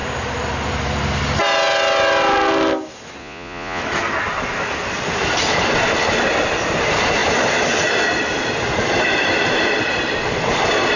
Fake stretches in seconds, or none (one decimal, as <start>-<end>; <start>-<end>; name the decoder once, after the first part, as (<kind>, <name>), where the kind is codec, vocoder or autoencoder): 3.2-3.8 (vocoder, Vocos)